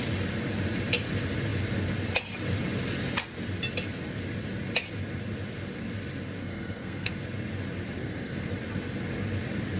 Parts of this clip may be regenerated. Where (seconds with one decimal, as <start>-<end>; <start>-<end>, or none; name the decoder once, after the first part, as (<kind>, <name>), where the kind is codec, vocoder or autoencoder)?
6.4-7.1 (codec, SNAC); 8.0-8.5